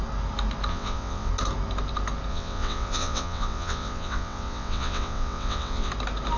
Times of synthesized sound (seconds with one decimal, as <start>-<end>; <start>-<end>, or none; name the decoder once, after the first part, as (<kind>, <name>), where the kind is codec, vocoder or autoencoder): 0.7-1.3 (vocoder, WaveNeXt); 2.3-5.9